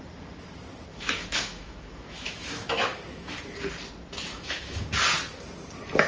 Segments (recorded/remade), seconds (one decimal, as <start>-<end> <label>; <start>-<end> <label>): 0.0-0.9 recorded; 0.9-3.4 remade; 3.4-4.3 recorded; 4.3-4.9 remade; 4.9-6.1 recorded